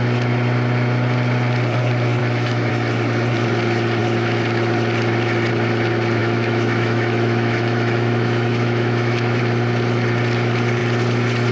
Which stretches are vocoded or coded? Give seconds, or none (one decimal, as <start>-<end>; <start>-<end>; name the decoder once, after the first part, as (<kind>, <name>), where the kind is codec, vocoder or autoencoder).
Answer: 2.2-2.7 (autoencoder, DAC-VAE); 6.2-9.4